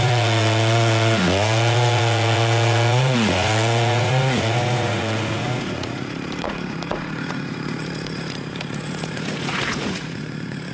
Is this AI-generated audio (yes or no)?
yes